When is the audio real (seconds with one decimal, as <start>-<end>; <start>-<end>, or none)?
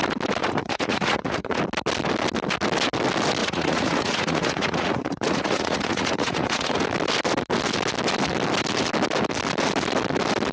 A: 0.0-0.4; 1.6-3.4; 6.8-10.5